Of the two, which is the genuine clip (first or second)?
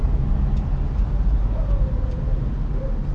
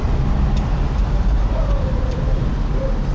first